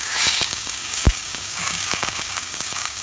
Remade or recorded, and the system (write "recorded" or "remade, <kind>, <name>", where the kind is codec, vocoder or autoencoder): remade, codec, DAC